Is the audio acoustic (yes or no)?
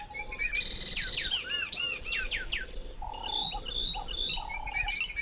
yes